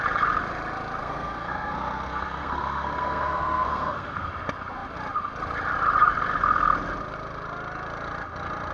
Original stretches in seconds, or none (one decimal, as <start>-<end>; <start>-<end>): 0.0-1.0; 4.3-8.7